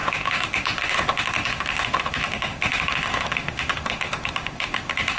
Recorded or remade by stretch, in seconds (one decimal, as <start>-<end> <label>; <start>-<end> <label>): 0.0-5.2 remade